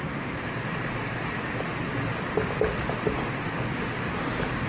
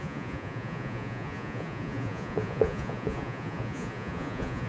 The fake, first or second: second